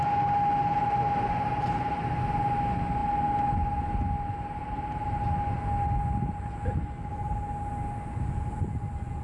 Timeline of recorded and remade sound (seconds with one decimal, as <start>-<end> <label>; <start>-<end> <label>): 0.0-9.2 recorded